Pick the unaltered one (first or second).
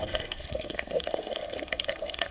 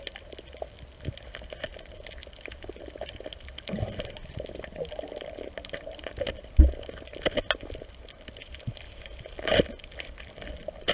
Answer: second